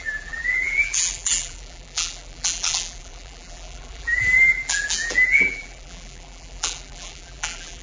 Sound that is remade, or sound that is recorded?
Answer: remade